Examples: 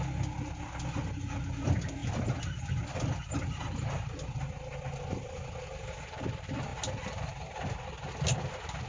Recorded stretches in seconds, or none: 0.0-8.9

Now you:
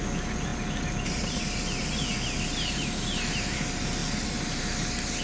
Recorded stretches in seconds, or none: 0.0-5.2

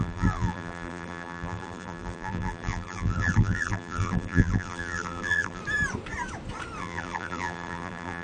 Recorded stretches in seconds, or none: 5.6-6.8

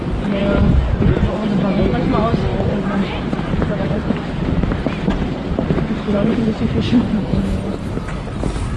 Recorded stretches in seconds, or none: 0.0-0.4; 1.0-2.5; 7.7-8.8

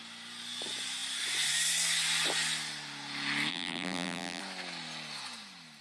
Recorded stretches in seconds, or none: 0.0-3.5; 4.4-5.8

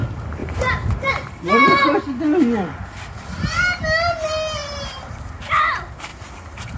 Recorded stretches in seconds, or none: 0.0-0.4; 1.1-4.6; 5.3-6.1